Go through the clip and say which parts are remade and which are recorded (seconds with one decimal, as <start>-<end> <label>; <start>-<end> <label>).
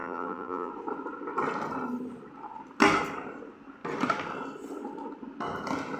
0.0-0.7 remade; 0.7-6.0 recorded